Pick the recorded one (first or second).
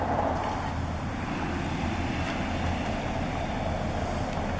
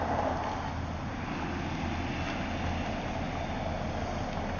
second